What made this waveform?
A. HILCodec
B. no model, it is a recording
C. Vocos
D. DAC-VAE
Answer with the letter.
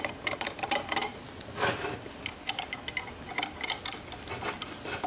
B